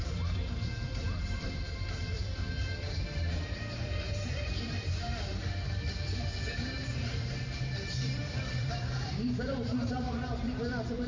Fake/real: fake